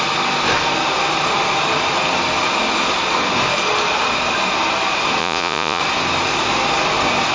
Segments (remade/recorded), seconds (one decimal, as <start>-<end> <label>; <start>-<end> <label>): 0.0-5.2 recorded; 5.2-5.8 remade; 5.8-7.3 recorded